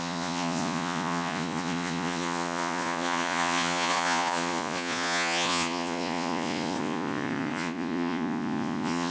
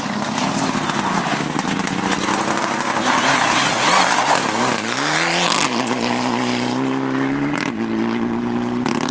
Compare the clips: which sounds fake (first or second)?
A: first